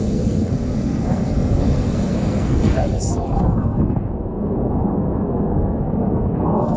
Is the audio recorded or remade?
remade